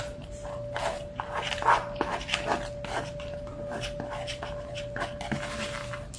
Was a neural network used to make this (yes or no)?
no